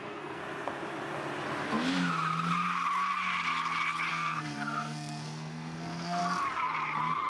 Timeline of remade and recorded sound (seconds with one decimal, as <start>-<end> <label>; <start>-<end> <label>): 0.0-0.4 remade; 0.4-4.1 recorded; 4.1-6.2 remade; 6.2-7.3 recorded